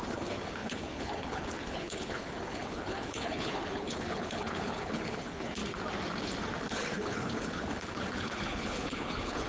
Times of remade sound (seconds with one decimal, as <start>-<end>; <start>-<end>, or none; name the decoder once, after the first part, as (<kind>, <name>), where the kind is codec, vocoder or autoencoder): 0.0-5.6 (codec, HILCodec); 6.6-9.5